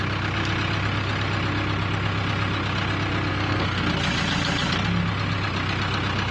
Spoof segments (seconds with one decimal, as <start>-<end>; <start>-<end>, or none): 3.3-3.8